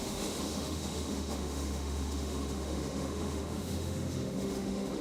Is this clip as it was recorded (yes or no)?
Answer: no